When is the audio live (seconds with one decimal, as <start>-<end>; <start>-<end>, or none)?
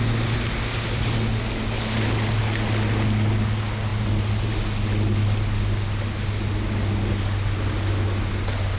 0.0-3.9; 4.5-8.8